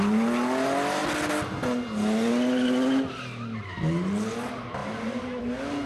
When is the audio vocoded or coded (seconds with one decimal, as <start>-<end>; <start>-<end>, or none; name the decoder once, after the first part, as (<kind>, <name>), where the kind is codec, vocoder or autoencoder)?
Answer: 4.8-5.4 (vocoder, BigVGAN v2)